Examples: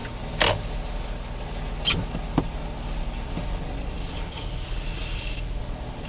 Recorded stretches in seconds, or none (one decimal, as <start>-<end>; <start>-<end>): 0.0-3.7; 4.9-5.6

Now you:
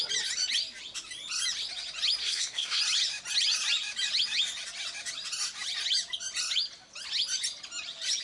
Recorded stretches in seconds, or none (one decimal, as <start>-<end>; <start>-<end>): 0.0-2.2; 2.8-8.2

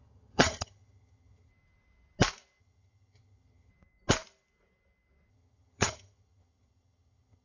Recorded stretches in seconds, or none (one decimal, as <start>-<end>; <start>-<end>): 1.5-2.6; 3.7-5.3